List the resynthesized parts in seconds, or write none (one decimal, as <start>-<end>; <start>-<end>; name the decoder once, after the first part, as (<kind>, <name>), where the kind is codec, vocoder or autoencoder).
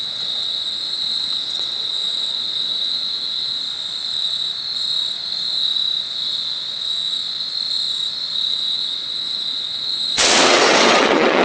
0.0-3.6 (vocoder, WaveNeXt); 8.5-11.4